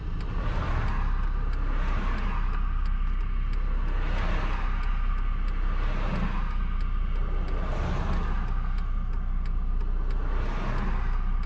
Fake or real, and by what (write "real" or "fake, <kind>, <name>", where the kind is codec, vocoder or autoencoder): real